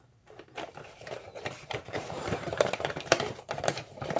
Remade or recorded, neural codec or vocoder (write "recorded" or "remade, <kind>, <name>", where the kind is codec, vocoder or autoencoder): remade, vocoder, BigVGAN v2